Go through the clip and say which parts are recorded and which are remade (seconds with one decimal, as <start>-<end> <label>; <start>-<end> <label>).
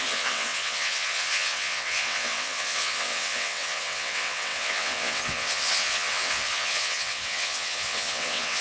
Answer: 0.0-8.6 remade